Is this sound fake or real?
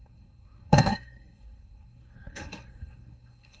fake